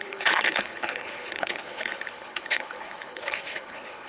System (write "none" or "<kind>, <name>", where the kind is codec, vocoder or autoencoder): codec, HILCodec